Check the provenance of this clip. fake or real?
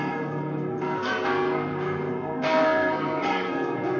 fake